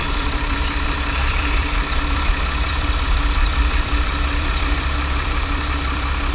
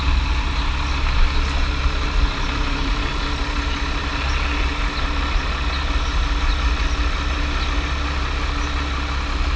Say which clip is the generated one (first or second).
first